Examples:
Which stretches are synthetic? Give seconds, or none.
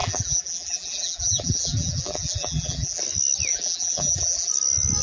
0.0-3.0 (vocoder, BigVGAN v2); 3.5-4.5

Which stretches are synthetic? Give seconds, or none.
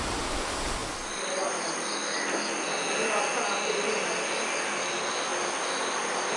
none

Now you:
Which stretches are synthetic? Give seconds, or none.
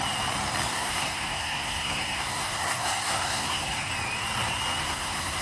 0.7-3.9 (codec, SNAC); 4.8-5.4